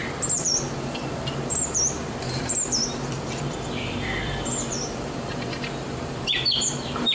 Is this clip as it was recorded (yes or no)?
no